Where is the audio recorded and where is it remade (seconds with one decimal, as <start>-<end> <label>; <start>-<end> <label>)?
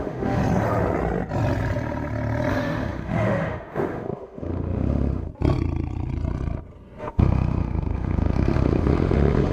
0.0-0.4 remade; 0.4-2.5 recorded; 2.5-5.3 remade; 5.3-7.0 recorded; 7.0-9.5 remade